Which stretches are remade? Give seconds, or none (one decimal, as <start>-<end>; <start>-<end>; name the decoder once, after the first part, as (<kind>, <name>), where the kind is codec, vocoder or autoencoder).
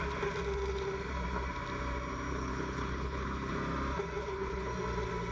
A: 2.3-3.6 (codec, HILCodec); 4.2-4.7